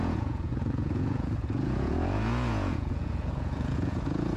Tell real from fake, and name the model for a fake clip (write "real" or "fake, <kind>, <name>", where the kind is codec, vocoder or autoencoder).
fake, vocoder, Vocos